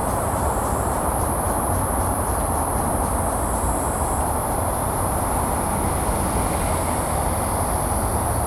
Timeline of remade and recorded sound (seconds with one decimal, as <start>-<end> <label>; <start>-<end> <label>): 0.0-2.7 remade; 2.7-8.5 recorded